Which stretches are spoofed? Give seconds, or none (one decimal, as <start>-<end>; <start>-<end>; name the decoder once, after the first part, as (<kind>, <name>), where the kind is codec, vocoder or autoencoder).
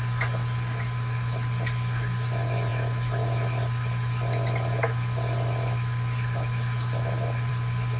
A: none